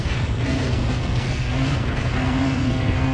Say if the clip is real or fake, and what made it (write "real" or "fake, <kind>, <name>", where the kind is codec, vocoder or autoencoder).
fake, codec, SNAC